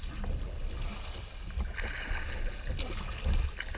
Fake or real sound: real